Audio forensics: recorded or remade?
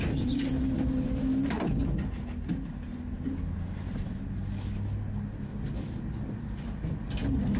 recorded